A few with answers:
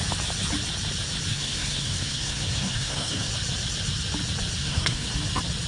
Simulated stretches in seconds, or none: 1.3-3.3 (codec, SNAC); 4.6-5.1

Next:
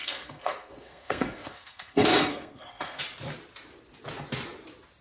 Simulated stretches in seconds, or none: 0.0-3.0 (codec, SNAC)

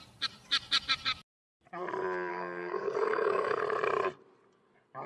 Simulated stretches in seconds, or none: 2.3-3.6 (codec, SNAC)

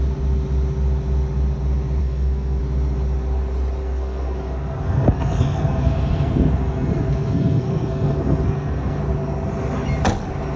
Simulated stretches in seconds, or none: 2.0-2.6 (codec, SNAC); 3.8-9.0

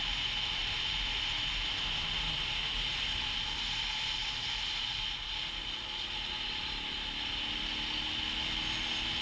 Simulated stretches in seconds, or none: none

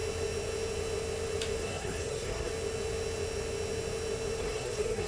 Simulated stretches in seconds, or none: 1.6-2.5 (codec, SNAC); 4.4-5.1

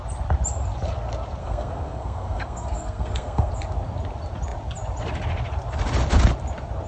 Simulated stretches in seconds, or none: 1.4-3.5 (codec, SNAC)